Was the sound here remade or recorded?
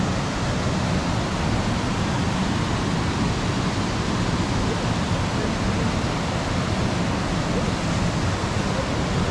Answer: recorded